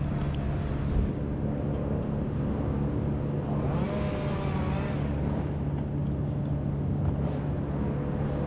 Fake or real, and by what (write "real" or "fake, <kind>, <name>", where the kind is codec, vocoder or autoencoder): real